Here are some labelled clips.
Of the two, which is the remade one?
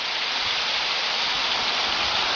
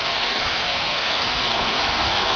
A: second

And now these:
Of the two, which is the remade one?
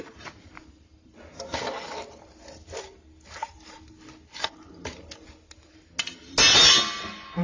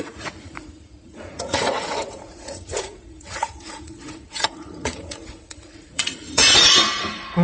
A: second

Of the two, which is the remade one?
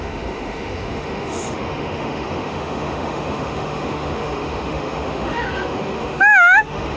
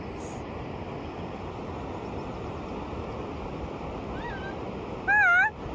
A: first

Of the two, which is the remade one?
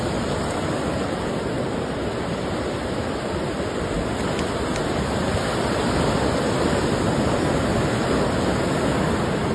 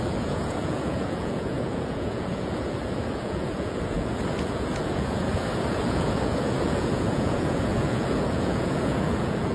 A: second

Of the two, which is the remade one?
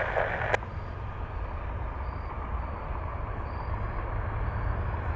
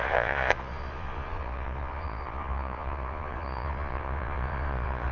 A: second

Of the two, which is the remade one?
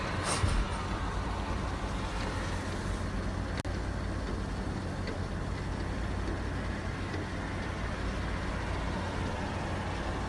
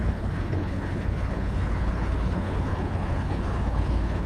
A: second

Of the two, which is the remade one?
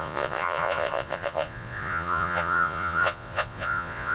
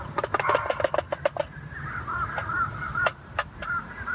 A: first